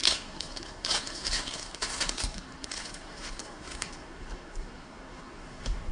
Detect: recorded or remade remade